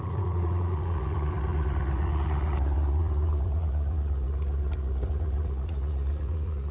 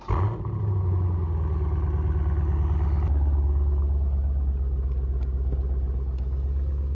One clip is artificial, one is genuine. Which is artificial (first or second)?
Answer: first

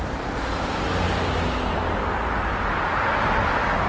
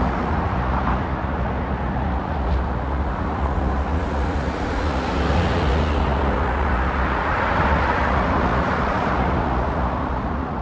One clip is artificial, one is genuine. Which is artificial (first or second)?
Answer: second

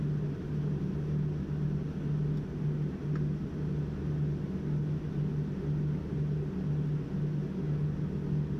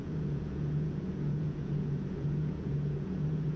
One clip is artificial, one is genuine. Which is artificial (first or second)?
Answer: second